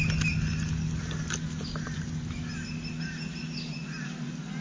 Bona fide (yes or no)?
yes